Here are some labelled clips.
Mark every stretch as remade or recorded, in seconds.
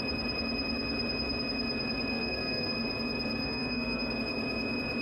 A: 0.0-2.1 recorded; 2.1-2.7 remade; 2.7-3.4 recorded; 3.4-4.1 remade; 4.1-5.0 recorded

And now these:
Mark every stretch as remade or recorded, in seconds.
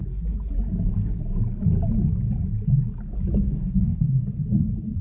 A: 0.0-3.4 recorded; 3.4-4.2 remade; 4.2-5.0 recorded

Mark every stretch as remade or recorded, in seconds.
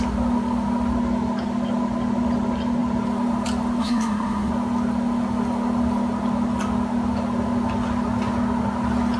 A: 0.0-3.8 recorded; 3.8-4.5 remade; 4.5-9.2 recorded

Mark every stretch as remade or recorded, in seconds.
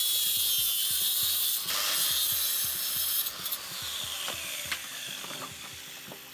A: 0.0-6.3 recorded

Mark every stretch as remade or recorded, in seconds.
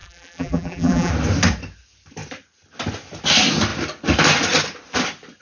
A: 0.0-1.1 remade; 1.1-5.4 recorded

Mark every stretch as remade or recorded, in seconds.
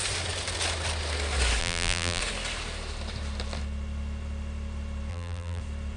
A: 0.0-1.6 recorded; 1.6-2.2 remade; 2.2-5.1 recorded; 5.1-5.6 remade; 5.6-6.0 recorded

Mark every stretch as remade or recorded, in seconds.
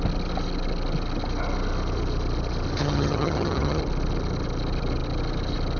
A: 0.0-2.8 recorded; 2.8-3.8 remade; 3.8-5.8 recorded